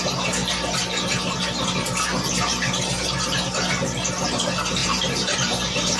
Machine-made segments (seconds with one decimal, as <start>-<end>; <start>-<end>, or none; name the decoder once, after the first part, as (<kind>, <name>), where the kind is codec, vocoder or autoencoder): 4.8-6.0 (vocoder, BigVGAN v2)